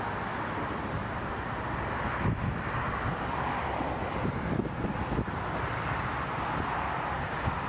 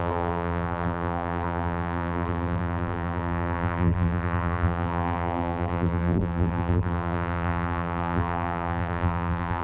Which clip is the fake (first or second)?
second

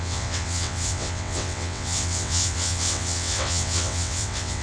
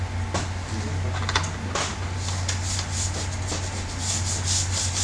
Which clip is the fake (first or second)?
first